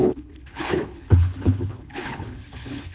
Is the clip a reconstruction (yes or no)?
yes